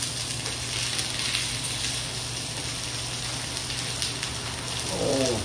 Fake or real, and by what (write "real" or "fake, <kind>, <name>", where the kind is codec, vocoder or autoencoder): real